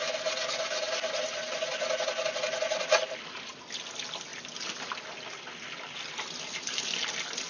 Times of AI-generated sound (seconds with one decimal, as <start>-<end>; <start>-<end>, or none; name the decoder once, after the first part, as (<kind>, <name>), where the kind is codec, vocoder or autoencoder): none